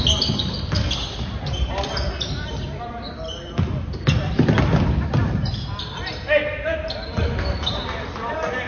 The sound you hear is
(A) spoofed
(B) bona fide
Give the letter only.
B